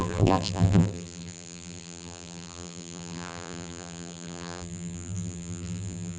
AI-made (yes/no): yes